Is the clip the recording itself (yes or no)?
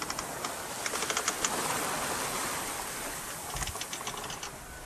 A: yes